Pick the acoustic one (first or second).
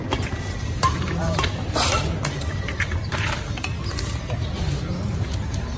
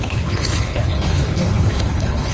first